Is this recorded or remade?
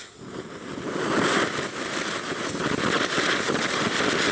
recorded